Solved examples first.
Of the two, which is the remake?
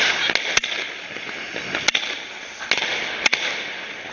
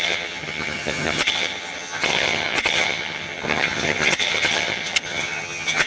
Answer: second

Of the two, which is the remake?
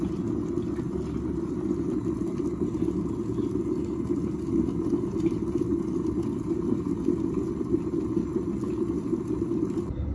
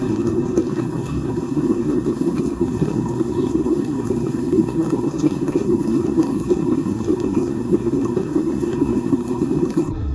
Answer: second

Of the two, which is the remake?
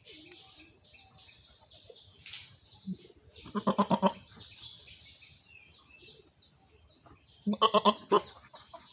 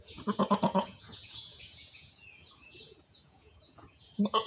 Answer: second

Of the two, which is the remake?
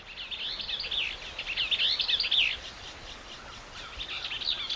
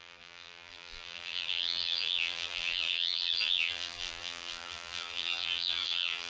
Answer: second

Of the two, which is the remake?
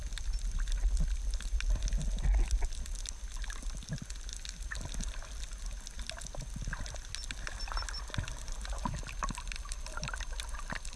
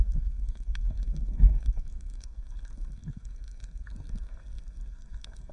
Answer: second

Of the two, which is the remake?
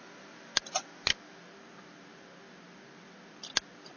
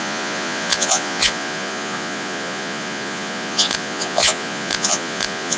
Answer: second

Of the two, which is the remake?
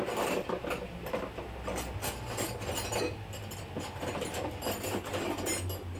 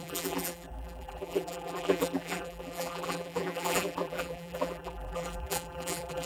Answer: second